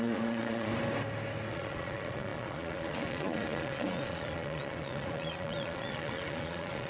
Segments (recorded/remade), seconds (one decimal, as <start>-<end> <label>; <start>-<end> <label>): 0.0-0.7 remade; 0.7-1.5 recorded; 1.5-6.9 remade